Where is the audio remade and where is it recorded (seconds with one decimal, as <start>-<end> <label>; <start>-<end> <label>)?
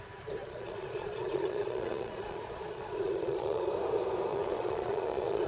0.0-0.4 recorded; 0.4-3.7 remade; 3.7-4.3 recorded; 4.3-5.5 remade